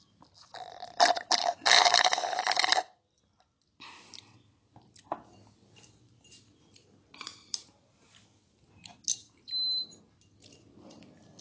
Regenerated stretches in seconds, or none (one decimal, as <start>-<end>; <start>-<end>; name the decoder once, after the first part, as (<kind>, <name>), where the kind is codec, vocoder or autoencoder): 1.4-1.9 (codec, DAC)